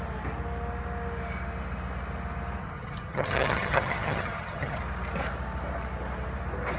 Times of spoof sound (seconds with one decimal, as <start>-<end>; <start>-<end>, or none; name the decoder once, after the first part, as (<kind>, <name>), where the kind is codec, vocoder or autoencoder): 2.6-4.8 (vocoder, HiFi-GAN)